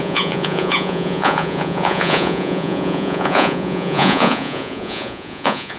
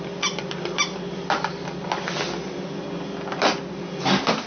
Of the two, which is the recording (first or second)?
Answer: second